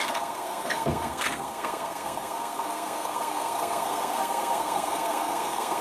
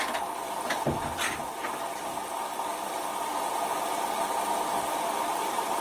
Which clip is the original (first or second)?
second